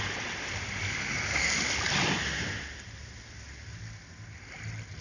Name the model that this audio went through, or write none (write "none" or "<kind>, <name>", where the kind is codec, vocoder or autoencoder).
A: none